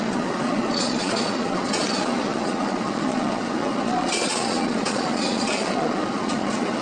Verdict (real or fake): fake